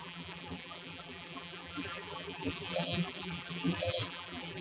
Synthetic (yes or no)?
yes